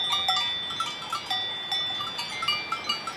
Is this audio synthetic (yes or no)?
no